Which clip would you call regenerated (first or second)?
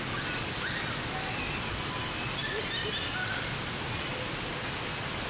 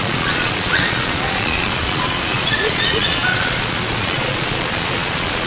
second